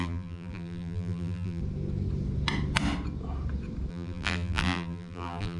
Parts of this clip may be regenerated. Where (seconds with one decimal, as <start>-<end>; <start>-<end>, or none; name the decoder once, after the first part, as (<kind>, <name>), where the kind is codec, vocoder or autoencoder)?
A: 0.0-1.6 (vocoder, BigVGAN v2); 3.9-5.6